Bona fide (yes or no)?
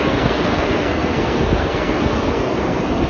no